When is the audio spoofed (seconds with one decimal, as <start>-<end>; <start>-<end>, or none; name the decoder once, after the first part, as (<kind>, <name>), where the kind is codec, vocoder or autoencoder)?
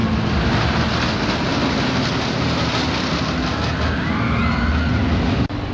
none